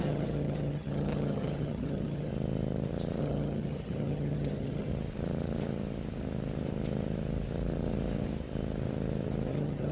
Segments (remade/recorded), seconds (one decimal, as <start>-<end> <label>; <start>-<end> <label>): 0.0-2.3 remade; 2.3-3.2 recorded; 3.2-4.9 remade; 4.9-9.5 recorded; 9.5-9.9 remade